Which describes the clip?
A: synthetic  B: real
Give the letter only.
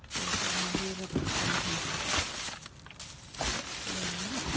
B